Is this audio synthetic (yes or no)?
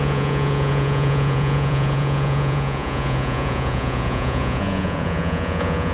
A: yes